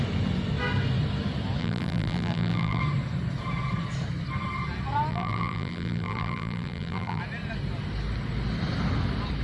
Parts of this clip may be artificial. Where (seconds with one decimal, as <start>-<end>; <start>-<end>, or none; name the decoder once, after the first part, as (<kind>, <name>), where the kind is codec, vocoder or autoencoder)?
1.6-2.8 (vocoder, BigVGAN v2); 5.1-7.2